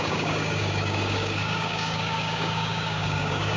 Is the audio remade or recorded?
remade